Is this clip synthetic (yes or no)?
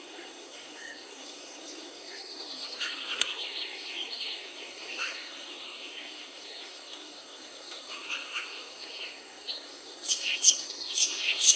yes